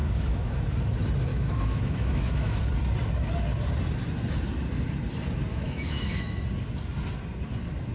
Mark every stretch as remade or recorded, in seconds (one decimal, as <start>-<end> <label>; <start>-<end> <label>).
0.0-0.6 remade; 0.6-1.3 recorded; 1.3-2.6 remade; 2.6-5.5 recorded; 5.5-6.4 remade; 6.4-7.9 recorded